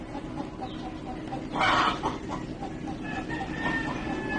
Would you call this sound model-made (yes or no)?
no